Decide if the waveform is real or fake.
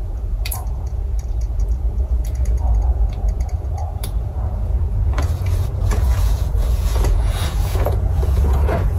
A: fake